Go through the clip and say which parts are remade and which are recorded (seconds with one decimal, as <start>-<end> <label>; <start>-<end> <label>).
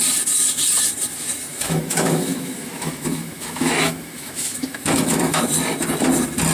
0.0-1.5 recorded; 1.5-5.4 remade; 5.4-6.5 recorded